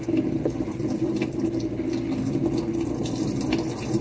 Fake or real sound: real